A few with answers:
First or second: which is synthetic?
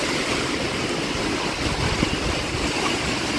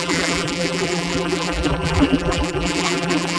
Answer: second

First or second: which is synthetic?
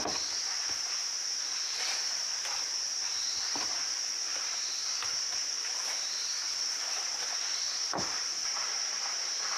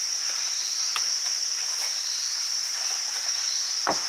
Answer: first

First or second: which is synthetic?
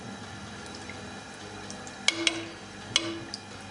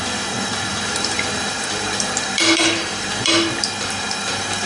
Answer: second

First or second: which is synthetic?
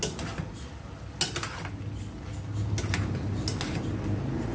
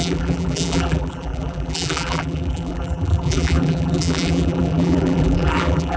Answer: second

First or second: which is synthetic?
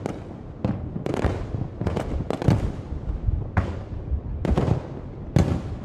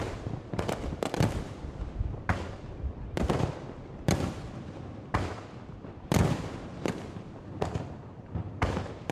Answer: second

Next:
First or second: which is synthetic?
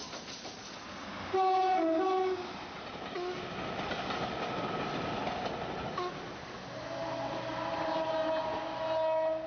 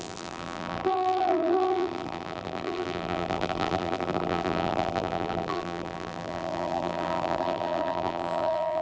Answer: second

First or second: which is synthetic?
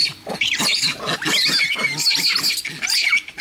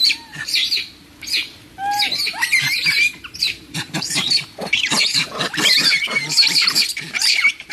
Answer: second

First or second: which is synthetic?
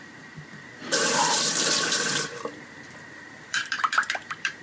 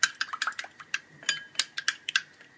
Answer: first